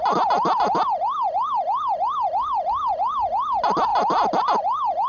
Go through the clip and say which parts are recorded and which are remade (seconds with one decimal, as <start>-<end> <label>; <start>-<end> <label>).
0.0-5.1 recorded